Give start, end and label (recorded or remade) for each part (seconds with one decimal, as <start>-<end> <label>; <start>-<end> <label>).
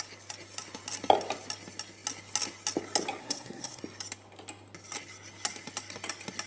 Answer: 0.0-3.2 recorded; 3.2-3.8 remade; 3.8-6.5 recorded